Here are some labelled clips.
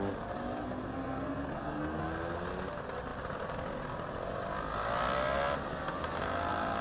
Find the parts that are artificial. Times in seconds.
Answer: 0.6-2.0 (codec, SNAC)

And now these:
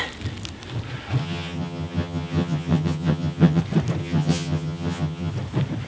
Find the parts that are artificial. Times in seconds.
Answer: 1.2-3.6 (vocoder, HiFi-GAN); 4.0-5.3

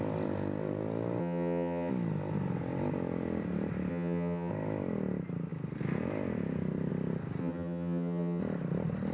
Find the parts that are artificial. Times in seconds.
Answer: 1.2-1.9 (vocoder, HiFi-GAN); 3.9-4.5; 7.4-8.4